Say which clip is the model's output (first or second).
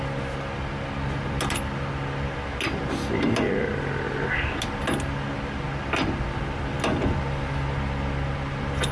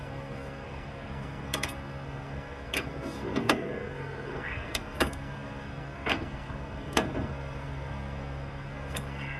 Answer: second